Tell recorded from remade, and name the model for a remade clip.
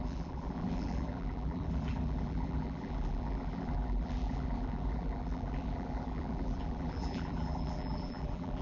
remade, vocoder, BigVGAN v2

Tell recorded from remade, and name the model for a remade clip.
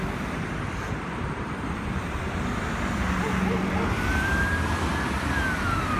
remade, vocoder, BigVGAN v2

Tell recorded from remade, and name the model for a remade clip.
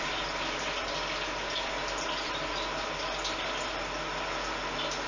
recorded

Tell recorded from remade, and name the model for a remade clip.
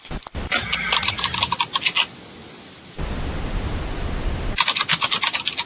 remade, vocoder, BigVGAN v2